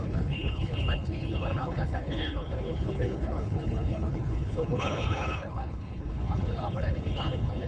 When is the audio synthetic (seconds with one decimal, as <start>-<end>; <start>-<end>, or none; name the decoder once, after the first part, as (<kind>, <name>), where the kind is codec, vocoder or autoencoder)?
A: 0.0-7.7 (codec, HILCodec)